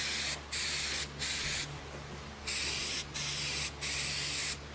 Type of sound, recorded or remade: recorded